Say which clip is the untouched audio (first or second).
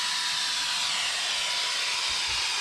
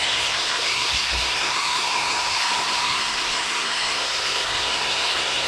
first